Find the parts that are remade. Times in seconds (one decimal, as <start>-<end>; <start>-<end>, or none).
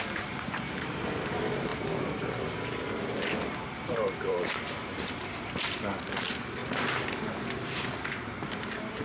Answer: 0.0-1.7; 3.3-9.0